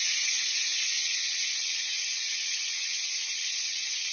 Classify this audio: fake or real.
fake